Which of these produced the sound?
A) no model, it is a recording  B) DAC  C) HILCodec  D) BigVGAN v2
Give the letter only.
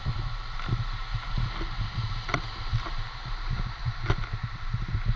A